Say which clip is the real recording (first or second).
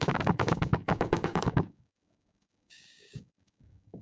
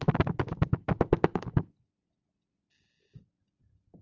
second